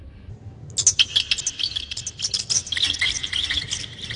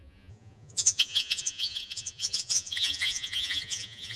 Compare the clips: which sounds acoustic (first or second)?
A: first